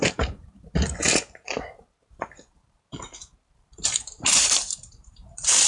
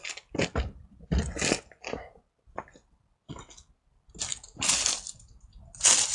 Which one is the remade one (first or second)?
first